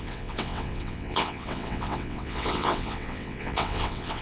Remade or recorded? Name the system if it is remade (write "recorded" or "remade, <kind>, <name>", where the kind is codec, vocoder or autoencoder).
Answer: remade, vocoder, WaveNeXt